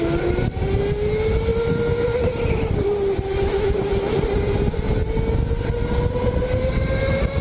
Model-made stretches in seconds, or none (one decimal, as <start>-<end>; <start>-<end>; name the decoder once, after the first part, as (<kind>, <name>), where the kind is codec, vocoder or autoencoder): none